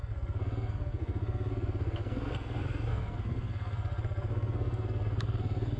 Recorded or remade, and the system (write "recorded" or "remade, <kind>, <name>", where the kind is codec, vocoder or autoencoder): remade, codec, SNAC